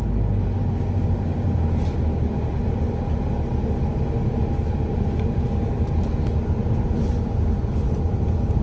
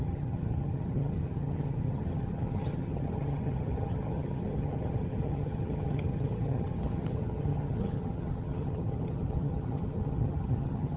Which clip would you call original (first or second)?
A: first